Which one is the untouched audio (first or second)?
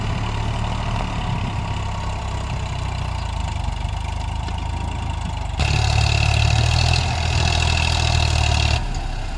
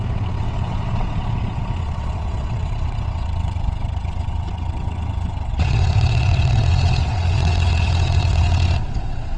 first